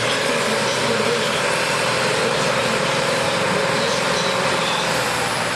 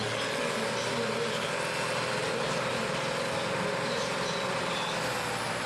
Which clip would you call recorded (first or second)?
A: second